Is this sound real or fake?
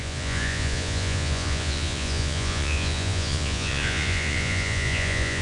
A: fake